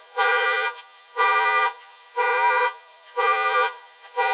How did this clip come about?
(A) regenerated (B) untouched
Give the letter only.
A